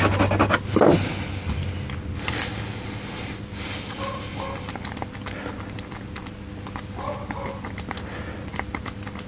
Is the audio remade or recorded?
recorded